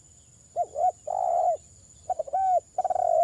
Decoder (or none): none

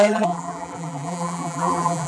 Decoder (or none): vocoder, BigVGAN v2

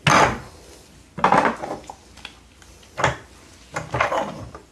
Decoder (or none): none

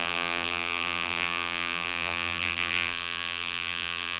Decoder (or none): vocoder, BigVGAN v2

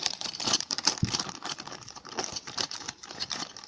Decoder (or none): vocoder, BigVGAN v2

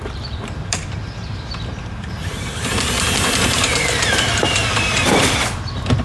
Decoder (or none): vocoder, BigVGAN v2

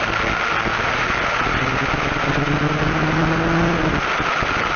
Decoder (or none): none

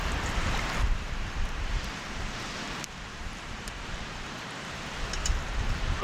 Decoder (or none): vocoder, BigVGAN v2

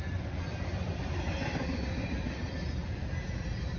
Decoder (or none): none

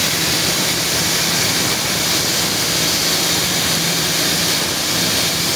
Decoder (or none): vocoder, BigVGAN v2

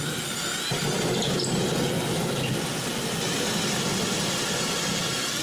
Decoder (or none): none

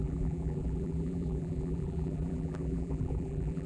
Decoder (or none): vocoder, BigVGAN v2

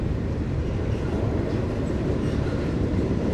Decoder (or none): vocoder, BigVGAN v2